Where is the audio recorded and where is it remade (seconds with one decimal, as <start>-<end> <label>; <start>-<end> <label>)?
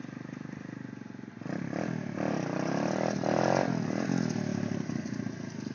0.0-4.5 recorded; 4.5-5.0 remade; 5.0-5.7 recorded